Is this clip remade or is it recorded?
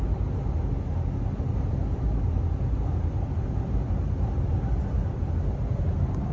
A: recorded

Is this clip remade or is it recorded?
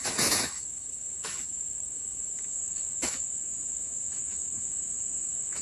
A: remade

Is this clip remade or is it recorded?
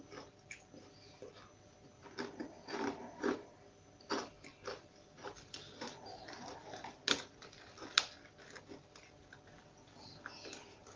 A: recorded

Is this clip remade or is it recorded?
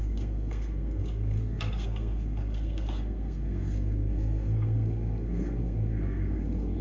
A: remade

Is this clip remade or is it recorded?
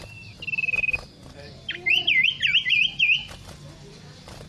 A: recorded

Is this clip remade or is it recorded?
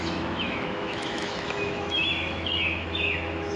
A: remade